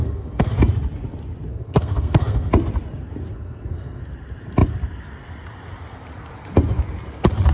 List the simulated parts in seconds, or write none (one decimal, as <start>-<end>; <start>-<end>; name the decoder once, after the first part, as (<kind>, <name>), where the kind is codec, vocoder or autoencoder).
0.0-0.5 (codec, SNAC); 1.5-2.5; 3.3-4.0